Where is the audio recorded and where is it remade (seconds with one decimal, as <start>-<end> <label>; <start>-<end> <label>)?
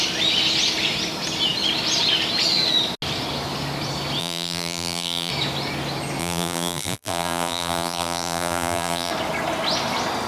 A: 0.0-4.2 recorded; 4.2-5.3 remade; 5.3-6.2 recorded; 6.2-9.1 remade; 9.1-10.3 recorded